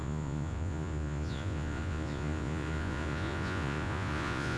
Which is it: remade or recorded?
remade